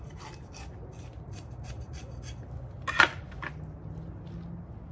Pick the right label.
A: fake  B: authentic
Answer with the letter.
B